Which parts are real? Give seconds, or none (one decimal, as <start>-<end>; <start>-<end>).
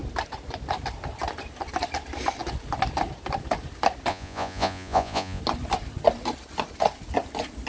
0.0-4.1; 5.4-7.7